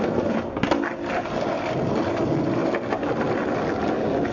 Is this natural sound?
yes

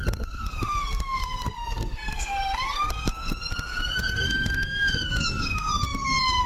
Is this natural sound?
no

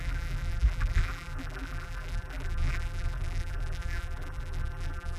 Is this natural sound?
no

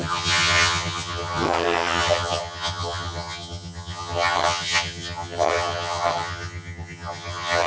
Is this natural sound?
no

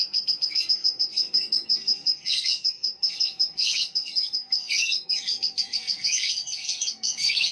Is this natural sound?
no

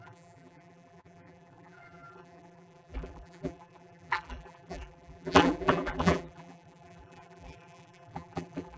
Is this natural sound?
no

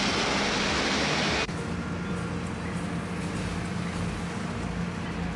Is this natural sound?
yes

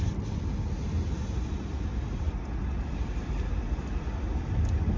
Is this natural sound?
yes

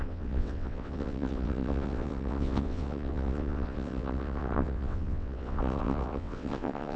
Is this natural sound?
no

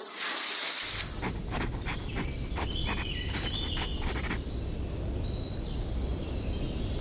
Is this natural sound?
yes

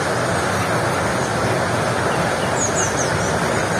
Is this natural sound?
yes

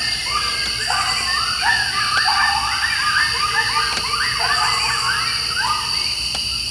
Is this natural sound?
yes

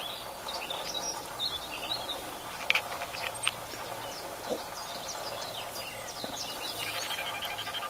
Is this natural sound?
yes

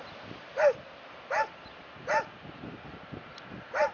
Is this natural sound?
yes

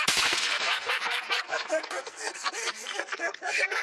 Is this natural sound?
no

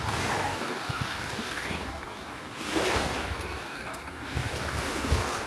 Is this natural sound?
no